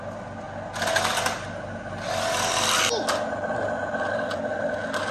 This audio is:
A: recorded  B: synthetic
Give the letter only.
A